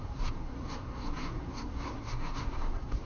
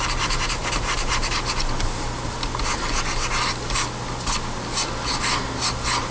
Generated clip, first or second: first